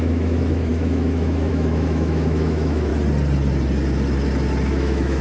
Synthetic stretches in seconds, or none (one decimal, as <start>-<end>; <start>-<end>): 0.0-2.9; 4.7-5.2